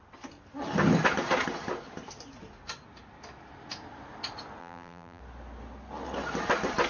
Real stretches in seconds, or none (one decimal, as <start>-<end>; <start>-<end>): 0.0-4.6; 5.2-6.9